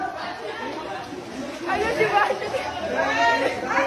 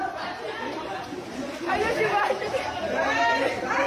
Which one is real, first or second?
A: first